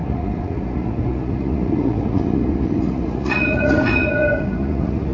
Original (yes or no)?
no